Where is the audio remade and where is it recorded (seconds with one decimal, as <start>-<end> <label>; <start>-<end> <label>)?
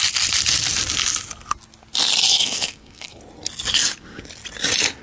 0.0-2.3 recorded; 2.3-3.2 remade; 3.2-5.0 recorded